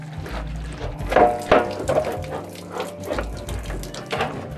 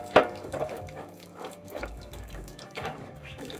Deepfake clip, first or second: second